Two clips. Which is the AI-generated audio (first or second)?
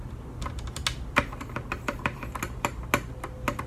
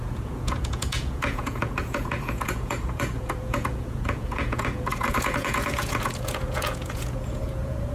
second